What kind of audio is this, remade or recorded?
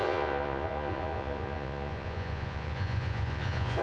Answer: remade